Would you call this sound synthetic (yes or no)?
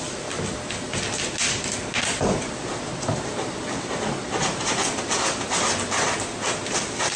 no